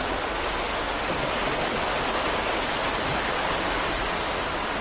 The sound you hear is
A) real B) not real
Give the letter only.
A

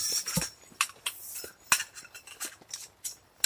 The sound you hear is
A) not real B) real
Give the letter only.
B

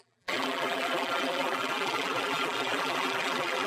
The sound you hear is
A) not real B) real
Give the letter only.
A